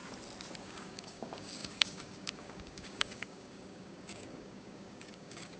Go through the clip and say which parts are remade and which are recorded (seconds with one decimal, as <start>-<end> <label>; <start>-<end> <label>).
0.0-0.6 recorded; 0.6-5.6 remade